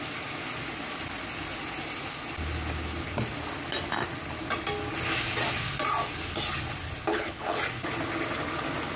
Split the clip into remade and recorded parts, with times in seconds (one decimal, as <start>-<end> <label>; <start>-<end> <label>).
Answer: 0.0-7.1 recorded; 7.1-7.6 remade; 7.6-9.0 recorded